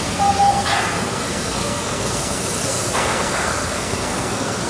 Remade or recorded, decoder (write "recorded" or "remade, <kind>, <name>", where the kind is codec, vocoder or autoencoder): remade, codec, SNAC